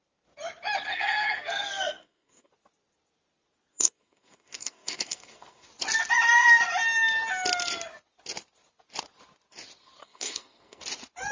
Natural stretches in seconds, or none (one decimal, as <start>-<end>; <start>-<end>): 0.0-0.9; 2.5-3.7; 5.7-10.0; 10.8-11.3